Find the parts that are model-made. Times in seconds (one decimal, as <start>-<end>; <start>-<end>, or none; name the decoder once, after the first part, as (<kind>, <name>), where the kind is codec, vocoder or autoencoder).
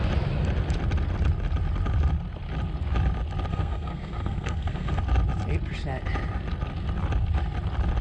3.5-5.0 (codec, SNAC)